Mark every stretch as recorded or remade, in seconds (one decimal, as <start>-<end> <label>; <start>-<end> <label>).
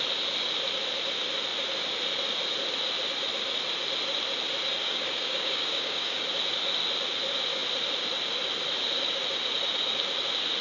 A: 0.0-4.8 recorded; 4.8-6.2 remade; 6.2-10.6 recorded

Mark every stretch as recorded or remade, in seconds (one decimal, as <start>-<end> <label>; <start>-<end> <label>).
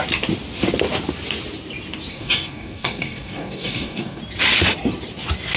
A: 0.0-2.1 recorded; 2.1-4.2 remade; 4.2-5.6 recorded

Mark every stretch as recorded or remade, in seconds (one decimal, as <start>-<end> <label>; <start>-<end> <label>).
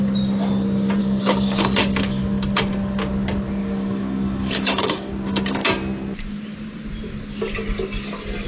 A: 0.0-1.0 recorded; 1.0-2.2 remade; 2.2-3.6 recorded; 3.6-5.1 remade; 5.1-8.5 recorded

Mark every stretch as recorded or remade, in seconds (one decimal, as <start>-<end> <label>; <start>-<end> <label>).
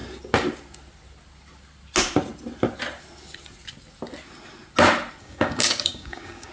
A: 0.0-5.2 recorded; 5.2-6.5 remade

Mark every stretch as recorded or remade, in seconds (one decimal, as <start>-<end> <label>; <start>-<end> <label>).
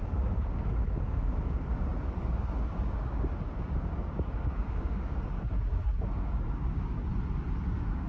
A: 0.0-7.1 remade; 7.1-7.6 recorded; 7.6-8.1 remade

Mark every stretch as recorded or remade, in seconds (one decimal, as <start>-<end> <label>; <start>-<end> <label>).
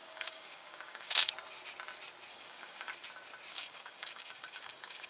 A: 0.0-1.3 remade; 1.3-2.3 recorded; 2.3-2.9 remade; 2.9-3.5 recorded; 3.5-5.1 remade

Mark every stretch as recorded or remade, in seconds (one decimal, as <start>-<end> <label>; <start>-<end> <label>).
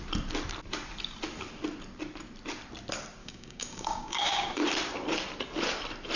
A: 0.0-3.2 recorded; 3.2-4.6 remade; 4.6-6.2 recorded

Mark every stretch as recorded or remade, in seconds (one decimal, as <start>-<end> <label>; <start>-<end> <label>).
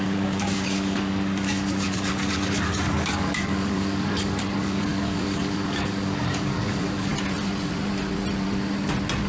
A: 0.0-7.1 remade; 7.1-9.3 recorded